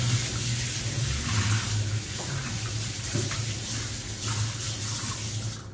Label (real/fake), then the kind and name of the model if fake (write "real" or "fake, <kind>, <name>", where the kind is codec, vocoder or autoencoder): real